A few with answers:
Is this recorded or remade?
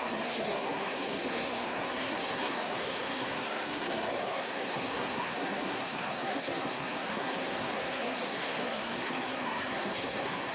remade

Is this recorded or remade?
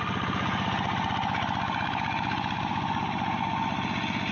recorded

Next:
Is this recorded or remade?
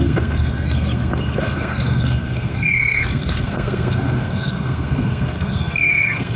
remade